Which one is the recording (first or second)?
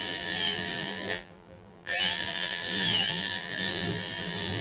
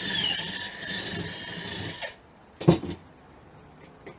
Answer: second